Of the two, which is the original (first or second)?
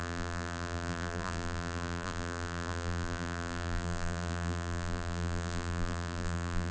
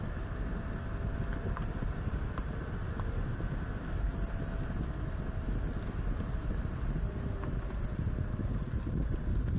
second